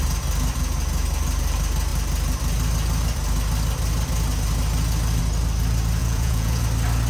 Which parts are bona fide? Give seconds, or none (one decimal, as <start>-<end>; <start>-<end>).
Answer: 0.0-6.0; 6.6-7.1